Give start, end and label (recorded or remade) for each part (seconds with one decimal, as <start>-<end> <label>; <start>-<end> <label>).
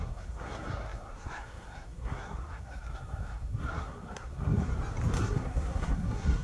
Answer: 0.0-4.7 remade; 4.7-5.2 recorded; 5.2-6.4 remade